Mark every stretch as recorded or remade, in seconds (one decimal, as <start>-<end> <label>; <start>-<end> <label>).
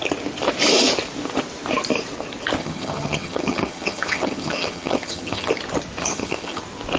0.0-2.6 recorded; 2.6-5.5 remade; 5.5-6.0 recorded; 6.0-6.6 remade; 6.6-7.0 recorded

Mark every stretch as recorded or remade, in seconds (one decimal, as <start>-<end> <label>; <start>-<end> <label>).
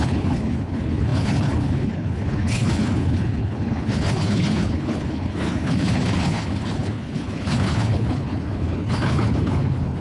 0.0-10.0 remade